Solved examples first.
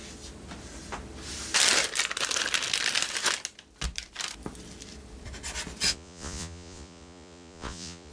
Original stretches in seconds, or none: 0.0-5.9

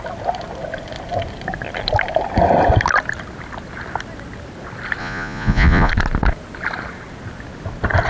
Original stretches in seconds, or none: 0.0-5.0; 5.9-8.1

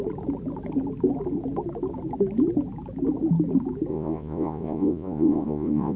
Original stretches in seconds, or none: 0.0-3.9

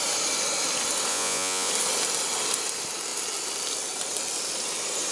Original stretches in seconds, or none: 0.0-1.1; 1.7-5.1

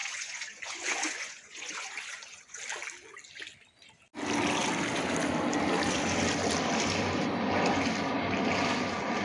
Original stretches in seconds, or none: 2.6-9.2

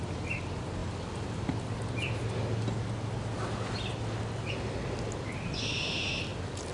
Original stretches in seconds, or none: 0.0-6.7

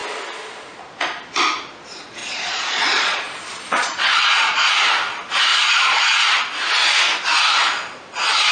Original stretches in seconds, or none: 0.0-2.2; 4.7-5.5; 6.2-8.5

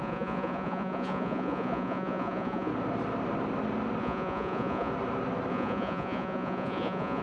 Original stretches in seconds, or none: 2.7-4.0; 4.9-5.5